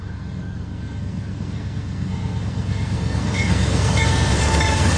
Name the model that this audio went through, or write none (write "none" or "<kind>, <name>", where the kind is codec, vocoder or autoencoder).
codec, SNAC